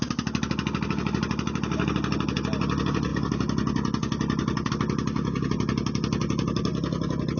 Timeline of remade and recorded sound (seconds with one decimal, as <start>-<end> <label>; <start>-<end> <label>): 0.0-7.4 recorded